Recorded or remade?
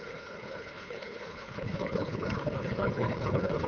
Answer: remade